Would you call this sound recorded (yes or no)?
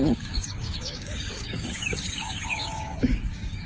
no